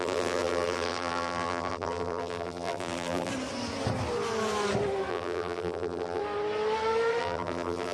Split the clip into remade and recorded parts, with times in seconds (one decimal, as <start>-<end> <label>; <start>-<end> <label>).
0.0-3.3 remade; 3.3-5.1 recorded; 5.1-6.2 remade; 6.2-7.2 recorded; 7.2-7.9 remade